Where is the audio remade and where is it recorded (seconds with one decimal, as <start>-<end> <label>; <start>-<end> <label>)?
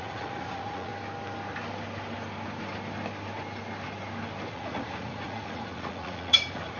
0.0-0.9 remade; 0.9-4.5 recorded; 4.5-6.8 remade